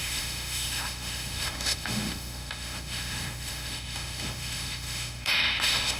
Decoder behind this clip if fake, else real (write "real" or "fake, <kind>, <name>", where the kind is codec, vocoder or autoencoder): fake, autoencoder, DAC-VAE